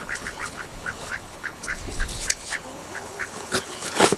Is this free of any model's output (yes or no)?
no